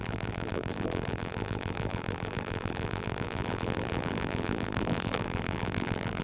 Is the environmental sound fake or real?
fake